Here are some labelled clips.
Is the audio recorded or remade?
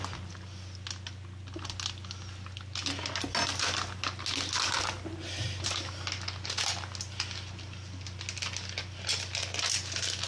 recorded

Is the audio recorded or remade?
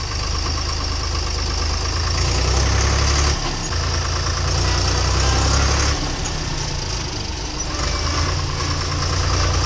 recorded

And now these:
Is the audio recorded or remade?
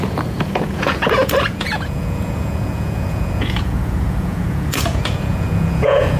remade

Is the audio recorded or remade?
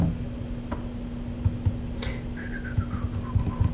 recorded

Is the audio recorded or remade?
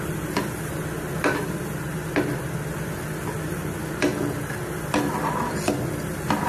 recorded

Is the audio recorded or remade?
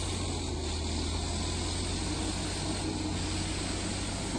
recorded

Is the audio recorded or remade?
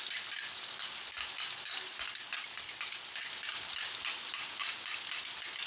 recorded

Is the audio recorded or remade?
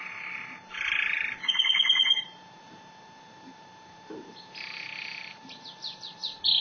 remade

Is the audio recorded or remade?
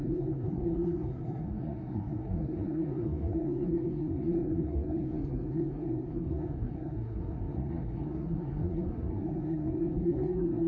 remade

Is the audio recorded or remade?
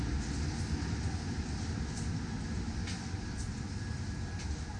recorded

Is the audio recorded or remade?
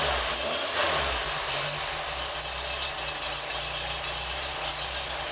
recorded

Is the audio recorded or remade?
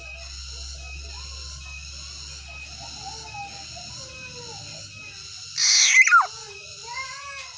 recorded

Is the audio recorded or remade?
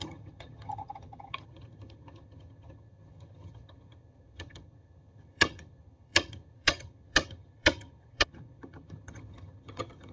remade